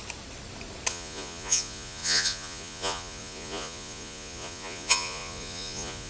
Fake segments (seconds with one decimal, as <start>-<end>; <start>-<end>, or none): 0.9-6.1